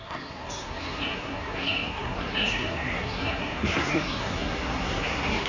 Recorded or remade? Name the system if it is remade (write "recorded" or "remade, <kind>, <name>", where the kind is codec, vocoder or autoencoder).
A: remade, codec, SNAC